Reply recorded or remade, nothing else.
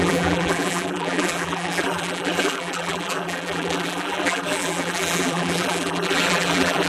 remade